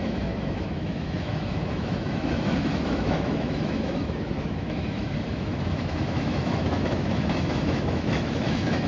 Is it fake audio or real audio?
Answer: fake